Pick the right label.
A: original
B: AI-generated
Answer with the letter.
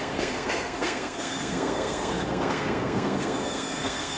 B